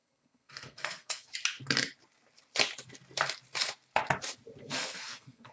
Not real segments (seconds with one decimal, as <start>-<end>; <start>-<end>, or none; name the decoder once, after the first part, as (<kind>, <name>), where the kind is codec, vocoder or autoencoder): 0.0-1.3 (codec, SNAC); 4.6-5.5